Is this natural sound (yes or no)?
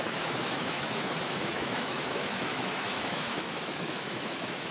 no